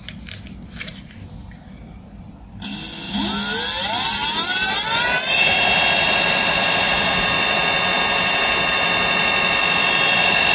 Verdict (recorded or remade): recorded